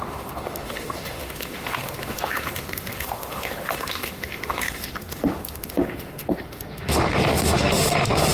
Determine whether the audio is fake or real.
fake